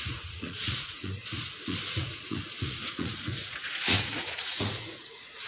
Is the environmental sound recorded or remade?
remade